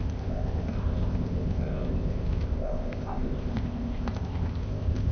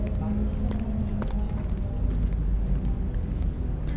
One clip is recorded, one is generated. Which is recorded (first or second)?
second